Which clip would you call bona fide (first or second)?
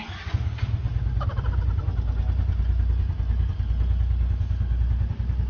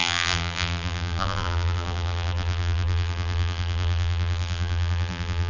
first